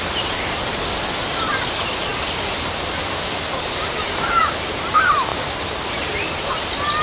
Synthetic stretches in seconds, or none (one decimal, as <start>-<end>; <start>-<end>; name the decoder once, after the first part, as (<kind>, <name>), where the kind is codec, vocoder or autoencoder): 2.1-2.9 (vocoder, BigVGAN v2); 3.8-4.4; 5.3-6.5